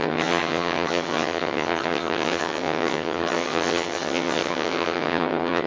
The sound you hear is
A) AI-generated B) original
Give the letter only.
A